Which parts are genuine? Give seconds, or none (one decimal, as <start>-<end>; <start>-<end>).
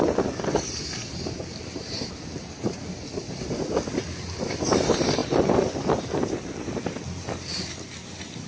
0.0-8.5